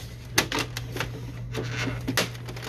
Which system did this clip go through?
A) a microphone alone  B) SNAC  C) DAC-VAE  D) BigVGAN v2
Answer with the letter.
A